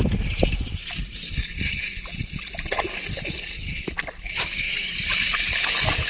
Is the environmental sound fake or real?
real